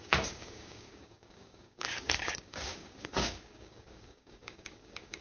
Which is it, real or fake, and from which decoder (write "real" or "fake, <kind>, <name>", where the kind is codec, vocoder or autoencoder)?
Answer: fake, codec, DAC